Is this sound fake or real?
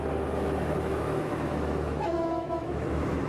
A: fake